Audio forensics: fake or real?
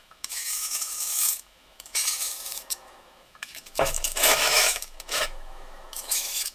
fake